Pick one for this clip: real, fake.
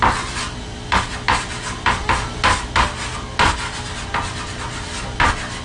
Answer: real